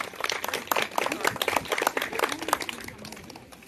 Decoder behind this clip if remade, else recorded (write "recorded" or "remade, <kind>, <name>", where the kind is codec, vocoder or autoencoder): recorded